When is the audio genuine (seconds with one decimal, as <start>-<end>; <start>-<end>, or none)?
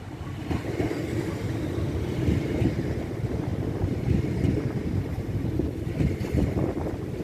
0.0-7.2